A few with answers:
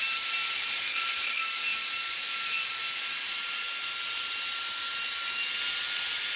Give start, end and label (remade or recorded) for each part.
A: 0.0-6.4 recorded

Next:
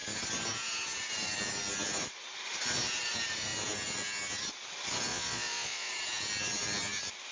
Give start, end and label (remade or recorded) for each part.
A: 0.0-5.1 recorded; 5.1-5.9 remade; 5.9-7.3 recorded

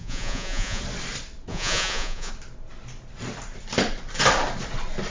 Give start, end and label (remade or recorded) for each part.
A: 0.0-0.8 remade; 0.8-1.5 recorded; 1.5-2.3 remade; 2.3-5.1 recorded

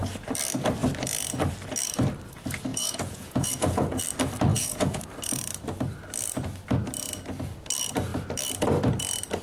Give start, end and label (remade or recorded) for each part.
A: 0.0-2.7 recorded; 2.7-4.0 remade; 4.0-4.5 recorded; 4.5-5.0 remade; 5.0-9.4 recorded